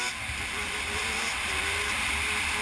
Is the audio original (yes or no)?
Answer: no